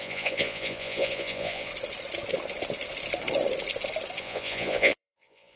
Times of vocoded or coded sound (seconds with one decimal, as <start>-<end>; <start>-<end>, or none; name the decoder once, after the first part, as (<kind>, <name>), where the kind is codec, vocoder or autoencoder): 0.0-1.7 (vocoder, Vocos); 4.2-5.6